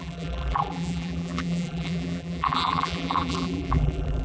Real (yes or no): no